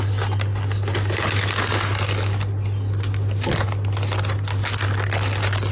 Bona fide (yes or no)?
yes